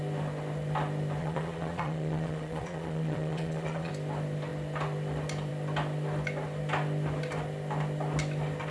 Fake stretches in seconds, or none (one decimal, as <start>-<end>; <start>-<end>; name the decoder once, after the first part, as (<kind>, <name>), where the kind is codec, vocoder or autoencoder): 1.2-3.9 (vocoder, Vocos)